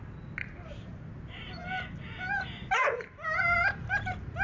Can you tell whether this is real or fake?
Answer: real